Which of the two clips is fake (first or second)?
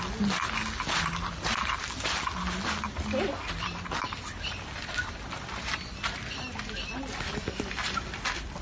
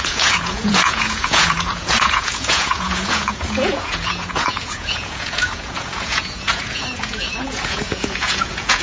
second